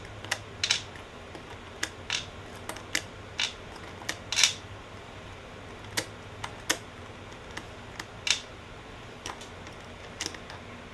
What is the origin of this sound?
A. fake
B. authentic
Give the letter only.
B